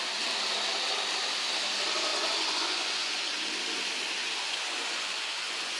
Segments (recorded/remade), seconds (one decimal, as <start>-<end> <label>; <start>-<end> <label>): 0.0-2.1 recorded; 2.1-3.2 remade; 3.2-4.4 recorded; 4.4-5.8 remade